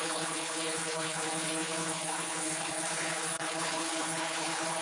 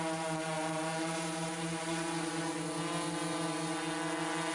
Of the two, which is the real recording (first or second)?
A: second